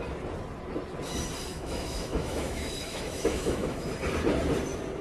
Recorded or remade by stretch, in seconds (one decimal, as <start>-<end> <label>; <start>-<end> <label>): 0.0-1.5 recorded; 1.5-3.9 remade; 3.9-5.0 recorded